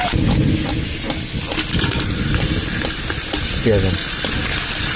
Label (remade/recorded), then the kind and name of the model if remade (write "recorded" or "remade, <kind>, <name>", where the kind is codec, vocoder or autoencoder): recorded